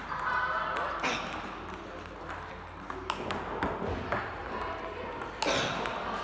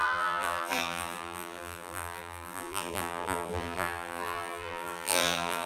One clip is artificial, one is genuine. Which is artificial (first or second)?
second